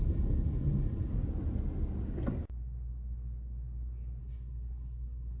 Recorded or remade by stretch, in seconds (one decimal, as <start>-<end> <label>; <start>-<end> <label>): 0.0-1.1 remade; 1.1-4.2 recorded; 4.2-5.4 remade